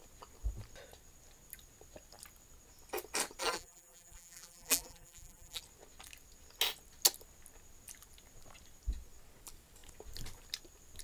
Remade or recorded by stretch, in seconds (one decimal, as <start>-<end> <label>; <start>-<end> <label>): 0.0-3.4 recorded; 3.4-5.6 remade; 5.6-11.0 recorded